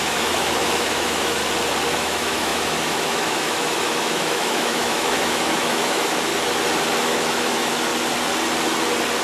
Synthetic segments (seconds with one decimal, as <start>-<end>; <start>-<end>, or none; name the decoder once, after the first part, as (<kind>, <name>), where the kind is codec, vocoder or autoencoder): 0.0-1.4 (autoencoder, DAC-VAE); 1.9-6.3; 7.0-7.9